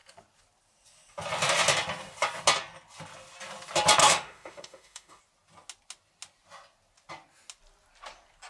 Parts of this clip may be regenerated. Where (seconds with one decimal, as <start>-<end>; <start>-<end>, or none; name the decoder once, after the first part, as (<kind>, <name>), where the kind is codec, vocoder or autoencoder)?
4.0-5.2 (autoencoder, DAC-VAE)